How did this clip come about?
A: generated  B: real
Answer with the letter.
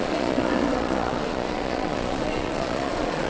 A